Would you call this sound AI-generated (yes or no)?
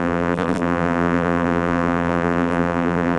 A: yes